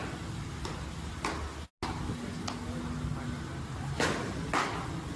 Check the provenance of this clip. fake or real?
real